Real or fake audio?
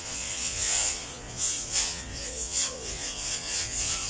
fake